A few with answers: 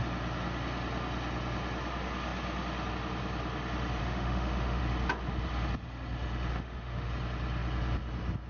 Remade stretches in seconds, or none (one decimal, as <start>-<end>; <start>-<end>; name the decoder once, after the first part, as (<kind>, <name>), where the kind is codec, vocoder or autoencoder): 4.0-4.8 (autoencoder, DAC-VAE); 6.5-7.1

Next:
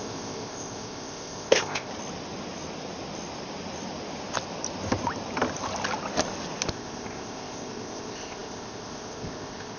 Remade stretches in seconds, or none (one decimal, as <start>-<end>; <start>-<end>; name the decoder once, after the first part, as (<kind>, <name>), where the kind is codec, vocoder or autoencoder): 0.0-1.9 (codec, ZipCodec); 6.7-9.8

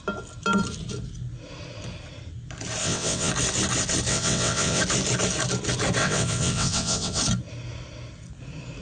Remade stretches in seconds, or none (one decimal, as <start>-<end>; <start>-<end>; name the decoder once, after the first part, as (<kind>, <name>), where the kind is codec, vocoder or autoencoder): 2.8-3.3 (vocoder, WaveNeXt); 4.1-4.8; 6.0-7.2